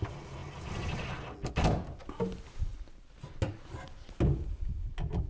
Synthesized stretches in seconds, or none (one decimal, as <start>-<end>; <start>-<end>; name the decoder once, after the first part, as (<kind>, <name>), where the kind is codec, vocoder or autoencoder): none